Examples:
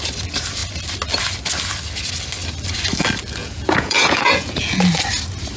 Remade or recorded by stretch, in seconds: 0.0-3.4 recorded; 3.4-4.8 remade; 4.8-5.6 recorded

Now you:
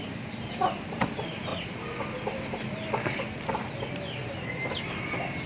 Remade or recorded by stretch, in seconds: 0.0-5.5 recorded

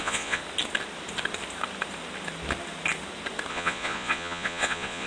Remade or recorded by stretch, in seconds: 0.0-0.4 remade; 0.4-3.5 recorded; 3.5-5.1 remade

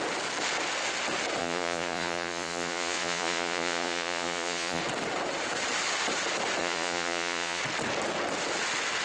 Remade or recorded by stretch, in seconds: 0.0-1.4 recorded; 1.4-4.8 remade; 4.8-6.6 recorded; 6.6-7.6 remade; 7.6-9.0 recorded

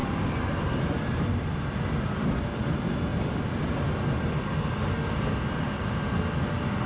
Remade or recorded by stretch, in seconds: 0.0-6.9 recorded

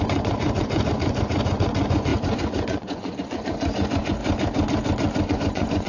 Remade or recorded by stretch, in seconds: 0.0-4.2 remade; 4.2-5.3 recorded; 5.3-5.9 remade